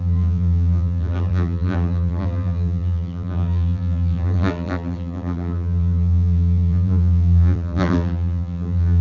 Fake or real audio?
fake